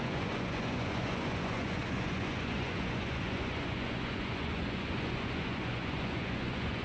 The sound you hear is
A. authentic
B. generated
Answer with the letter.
B